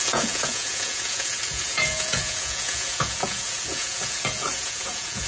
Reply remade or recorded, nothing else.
remade